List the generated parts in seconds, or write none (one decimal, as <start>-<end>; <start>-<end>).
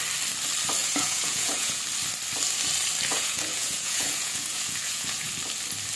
0.8-1.8; 3.1-5.3